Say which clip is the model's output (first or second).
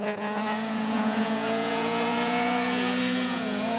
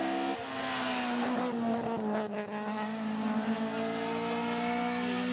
first